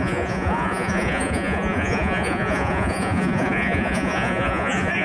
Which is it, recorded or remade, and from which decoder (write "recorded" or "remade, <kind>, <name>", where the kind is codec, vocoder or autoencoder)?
remade, vocoder, Vocos